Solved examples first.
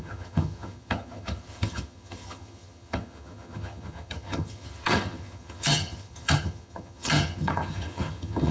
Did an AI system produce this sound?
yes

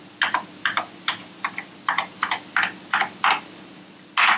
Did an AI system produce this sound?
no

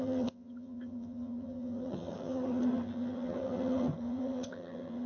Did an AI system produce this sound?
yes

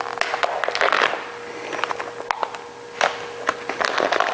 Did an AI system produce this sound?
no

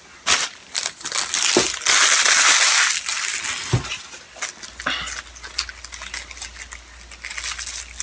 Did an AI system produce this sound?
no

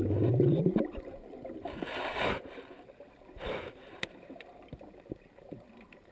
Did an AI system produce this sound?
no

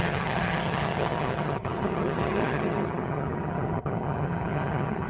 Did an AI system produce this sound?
yes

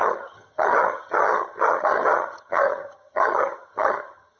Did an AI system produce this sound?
yes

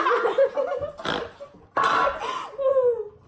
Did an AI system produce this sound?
no